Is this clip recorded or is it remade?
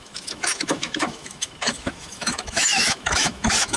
remade